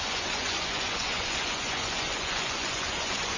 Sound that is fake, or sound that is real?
fake